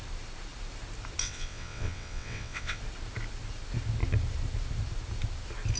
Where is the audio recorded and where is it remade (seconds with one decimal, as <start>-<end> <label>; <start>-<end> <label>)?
0.0-1.2 recorded; 1.2-2.8 remade; 2.8-5.8 recorded

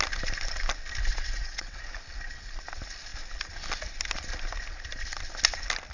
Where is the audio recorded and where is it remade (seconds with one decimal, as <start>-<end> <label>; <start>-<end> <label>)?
0.0-1.1 recorded; 1.1-1.8 remade; 1.8-5.9 recorded

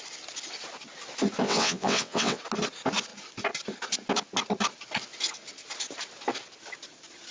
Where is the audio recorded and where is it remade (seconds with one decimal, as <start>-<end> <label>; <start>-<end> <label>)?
0.0-1.4 recorded; 1.4-2.4 remade; 2.4-7.3 recorded